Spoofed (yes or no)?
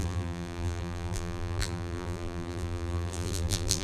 yes